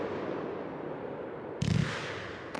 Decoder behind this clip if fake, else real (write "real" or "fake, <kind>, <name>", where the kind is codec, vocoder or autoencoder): real